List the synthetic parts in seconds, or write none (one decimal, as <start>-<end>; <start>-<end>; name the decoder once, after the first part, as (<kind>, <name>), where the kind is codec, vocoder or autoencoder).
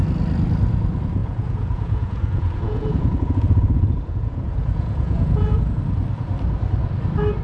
1.2-5.6 (vocoder, Vocos)